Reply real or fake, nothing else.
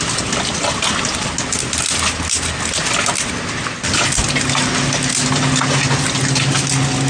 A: real